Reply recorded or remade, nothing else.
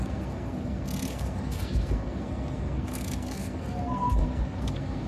remade